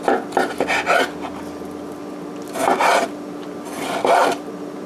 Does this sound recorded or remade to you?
recorded